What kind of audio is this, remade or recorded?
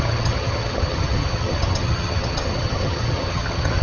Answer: remade